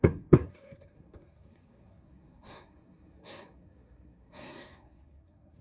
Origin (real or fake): fake